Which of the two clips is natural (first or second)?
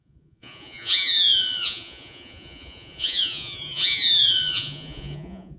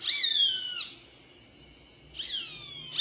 second